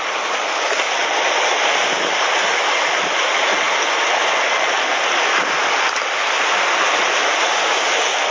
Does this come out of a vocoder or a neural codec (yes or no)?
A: no